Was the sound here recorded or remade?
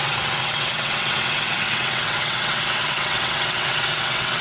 remade